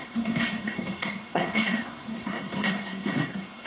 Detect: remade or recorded remade